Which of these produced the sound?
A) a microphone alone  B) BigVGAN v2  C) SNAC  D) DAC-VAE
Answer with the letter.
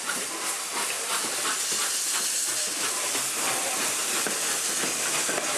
A